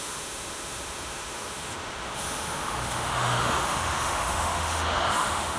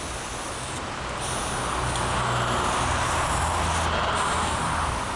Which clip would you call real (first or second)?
second